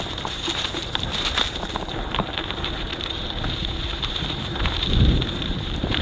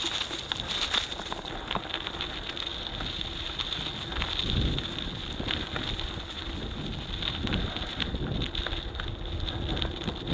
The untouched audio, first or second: second